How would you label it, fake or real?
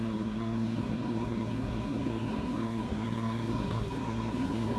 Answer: fake